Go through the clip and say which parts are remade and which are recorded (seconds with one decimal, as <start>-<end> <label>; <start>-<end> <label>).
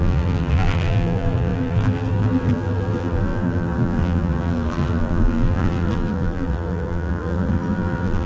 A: 0.0-8.3 remade